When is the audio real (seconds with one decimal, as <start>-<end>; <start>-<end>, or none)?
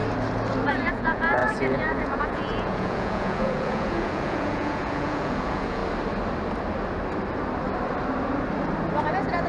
0.0-0.7; 5.8-9.1